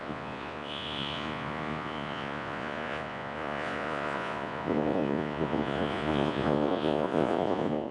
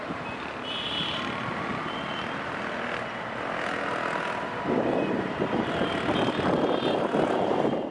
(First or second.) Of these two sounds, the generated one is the first